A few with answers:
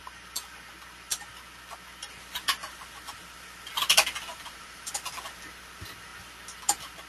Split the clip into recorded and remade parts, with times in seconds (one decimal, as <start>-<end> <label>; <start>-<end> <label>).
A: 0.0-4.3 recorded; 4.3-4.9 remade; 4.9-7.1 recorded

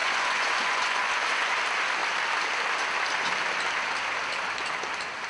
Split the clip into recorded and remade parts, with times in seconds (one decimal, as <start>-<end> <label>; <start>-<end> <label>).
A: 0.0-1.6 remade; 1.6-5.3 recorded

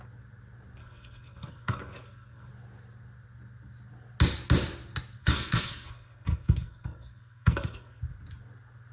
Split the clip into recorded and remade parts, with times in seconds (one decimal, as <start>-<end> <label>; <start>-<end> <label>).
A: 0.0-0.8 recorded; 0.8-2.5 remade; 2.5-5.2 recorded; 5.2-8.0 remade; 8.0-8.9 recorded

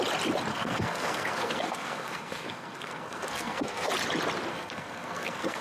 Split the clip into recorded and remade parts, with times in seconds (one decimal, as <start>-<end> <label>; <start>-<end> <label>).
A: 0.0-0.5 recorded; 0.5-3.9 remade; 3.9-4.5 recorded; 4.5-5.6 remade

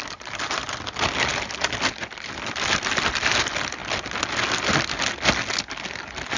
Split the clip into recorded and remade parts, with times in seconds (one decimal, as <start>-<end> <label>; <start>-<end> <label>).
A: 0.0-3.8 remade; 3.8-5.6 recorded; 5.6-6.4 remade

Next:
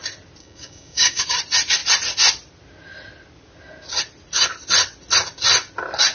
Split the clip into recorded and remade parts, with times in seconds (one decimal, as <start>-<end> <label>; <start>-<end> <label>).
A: 0.0-0.4 recorded; 0.4-1.2 remade; 1.2-6.1 recorded

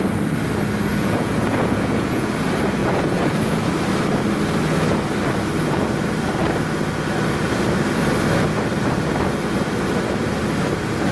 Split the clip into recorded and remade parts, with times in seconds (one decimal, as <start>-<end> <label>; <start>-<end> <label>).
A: 0.0-0.9 recorded; 0.9-2.3 remade; 2.3-2.8 recorded; 2.8-3.7 remade; 3.7-11.1 recorded

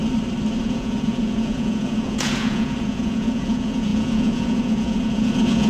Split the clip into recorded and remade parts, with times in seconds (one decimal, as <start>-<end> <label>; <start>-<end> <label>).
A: 0.0-0.6 recorded; 0.6-5.7 remade